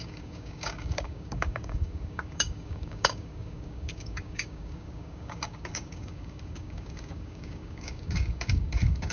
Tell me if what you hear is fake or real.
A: fake